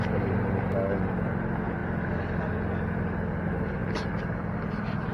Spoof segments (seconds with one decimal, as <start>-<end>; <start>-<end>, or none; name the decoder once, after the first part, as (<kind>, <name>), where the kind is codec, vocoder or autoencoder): none